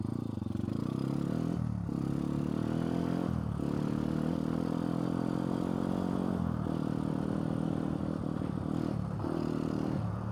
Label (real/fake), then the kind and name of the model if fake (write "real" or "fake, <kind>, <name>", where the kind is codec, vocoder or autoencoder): real